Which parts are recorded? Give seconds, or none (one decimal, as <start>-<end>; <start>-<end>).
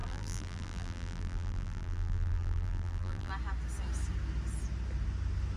3.3-5.6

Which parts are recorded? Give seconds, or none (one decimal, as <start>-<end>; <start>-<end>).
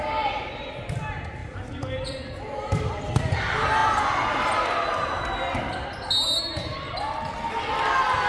0.0-1.4; 3.4-8.3